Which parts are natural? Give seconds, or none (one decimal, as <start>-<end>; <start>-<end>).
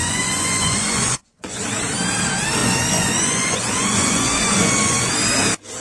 1.6-2.6; 5.1-5.8